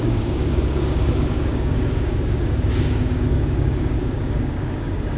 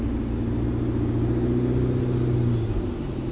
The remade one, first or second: first